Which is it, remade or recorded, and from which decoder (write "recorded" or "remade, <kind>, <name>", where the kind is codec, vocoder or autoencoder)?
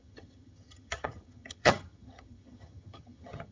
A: remade, vocoder, HiFi-GAN